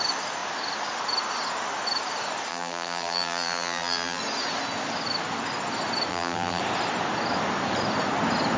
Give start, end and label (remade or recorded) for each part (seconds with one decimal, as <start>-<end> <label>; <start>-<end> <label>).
0.0-2.5 recorded; 2.5-4.2 remade; 4.2-6.1 recorded; 6.1-6.6 remade; 6.6-8.6 recorded